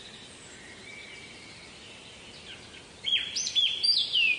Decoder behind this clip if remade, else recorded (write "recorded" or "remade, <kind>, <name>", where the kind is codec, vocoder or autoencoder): recorded